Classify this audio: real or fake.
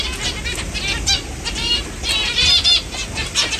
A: real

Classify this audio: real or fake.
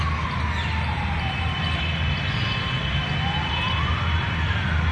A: real